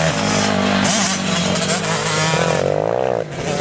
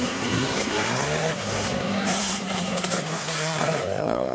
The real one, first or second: first